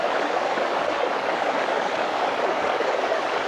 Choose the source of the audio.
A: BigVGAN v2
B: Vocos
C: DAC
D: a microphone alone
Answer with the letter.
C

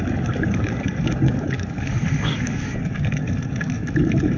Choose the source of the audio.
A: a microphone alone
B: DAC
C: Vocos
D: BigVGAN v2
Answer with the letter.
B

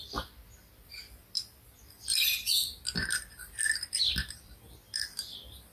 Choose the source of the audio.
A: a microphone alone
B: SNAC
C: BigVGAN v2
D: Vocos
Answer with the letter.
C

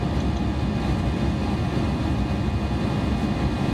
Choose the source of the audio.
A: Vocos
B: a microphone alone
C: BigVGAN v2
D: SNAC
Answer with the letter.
B